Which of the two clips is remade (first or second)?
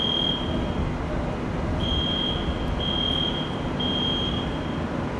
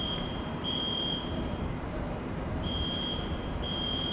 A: second